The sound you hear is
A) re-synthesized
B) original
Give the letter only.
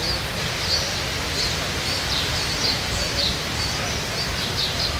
B